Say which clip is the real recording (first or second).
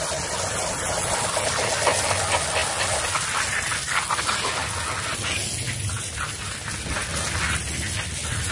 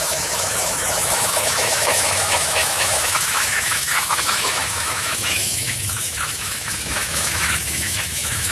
first